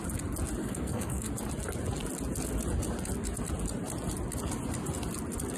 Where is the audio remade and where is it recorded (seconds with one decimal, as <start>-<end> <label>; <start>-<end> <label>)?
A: 0.0-0.6 recorded; 0.6-1.3 remade; 1.3-5.6 recorded